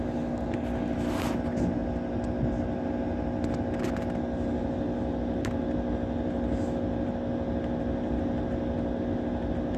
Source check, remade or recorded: recorded